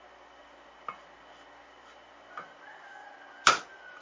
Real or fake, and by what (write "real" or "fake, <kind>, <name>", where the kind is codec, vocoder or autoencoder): real